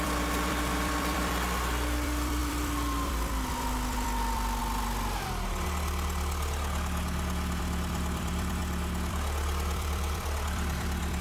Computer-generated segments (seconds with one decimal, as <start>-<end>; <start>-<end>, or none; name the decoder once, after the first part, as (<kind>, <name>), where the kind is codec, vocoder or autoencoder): 0.0-4.6 (vocoder, BigVGAN v2); 7.6-8.6; 9.1-11.2